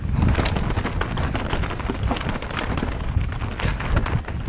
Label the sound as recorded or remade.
recorded